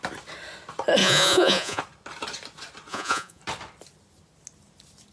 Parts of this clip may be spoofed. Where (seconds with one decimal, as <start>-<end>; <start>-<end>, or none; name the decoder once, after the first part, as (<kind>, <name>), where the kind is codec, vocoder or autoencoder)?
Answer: 1.0-1.8 (vocoder, Vocos); 2.9-3.4